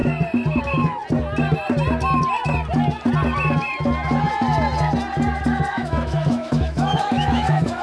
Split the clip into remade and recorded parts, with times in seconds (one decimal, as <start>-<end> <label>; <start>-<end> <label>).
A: 0.0-0.6 recorded; 0.6-1.0 remade; 1.0-5.7 recorded; 5.7-7.8 remade